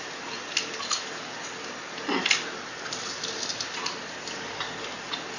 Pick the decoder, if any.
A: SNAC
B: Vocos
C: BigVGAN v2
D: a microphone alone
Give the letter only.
D